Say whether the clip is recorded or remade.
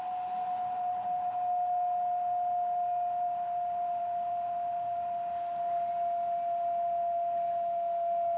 recorded